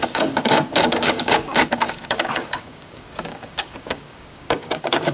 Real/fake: fake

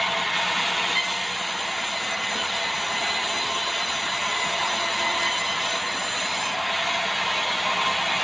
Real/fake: real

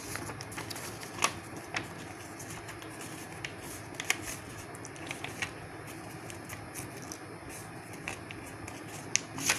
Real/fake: real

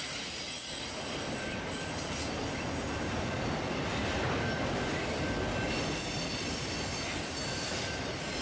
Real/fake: real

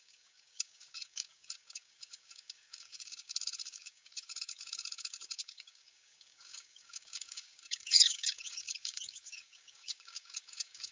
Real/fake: fake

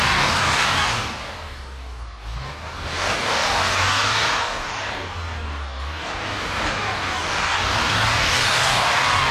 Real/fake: fake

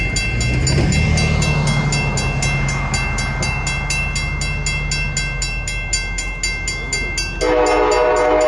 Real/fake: real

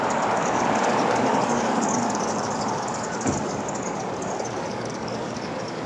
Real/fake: fake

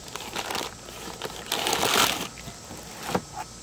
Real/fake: real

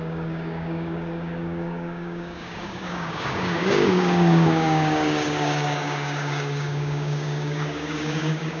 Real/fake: fake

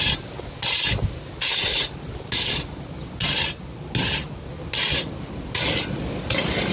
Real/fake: real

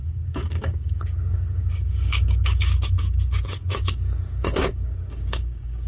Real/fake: fake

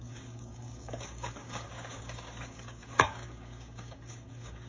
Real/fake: fake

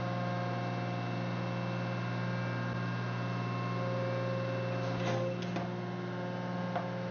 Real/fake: real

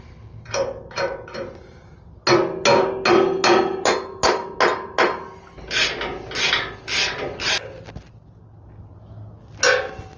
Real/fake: real